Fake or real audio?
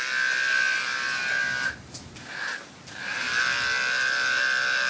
real